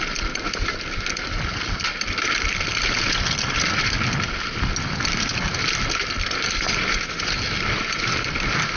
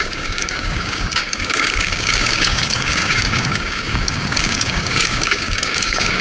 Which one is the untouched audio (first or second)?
first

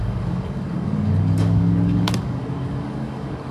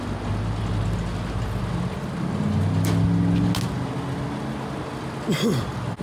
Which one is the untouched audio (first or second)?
second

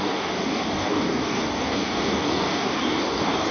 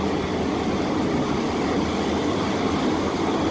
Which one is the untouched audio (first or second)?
second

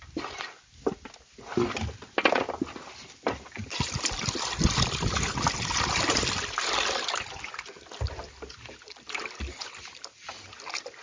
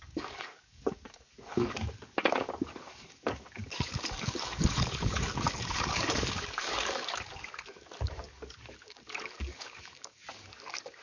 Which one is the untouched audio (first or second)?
first